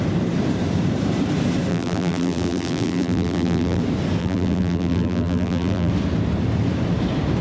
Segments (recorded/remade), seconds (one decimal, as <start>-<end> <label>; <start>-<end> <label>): 0.0-1.7 recorded; 1.7-3.8 remade; 3.8-4.2 recorded; 4.2-5.9 remade; 5.9-7.4 recorded